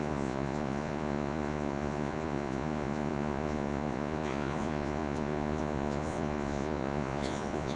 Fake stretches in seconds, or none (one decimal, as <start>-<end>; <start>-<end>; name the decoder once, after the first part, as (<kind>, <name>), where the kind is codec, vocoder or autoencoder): 0.0-7.8 (vocoder, Vocos)